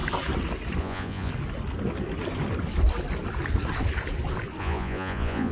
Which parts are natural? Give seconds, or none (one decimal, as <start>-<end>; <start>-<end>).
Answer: 0.0-0.8; 1.3-4.6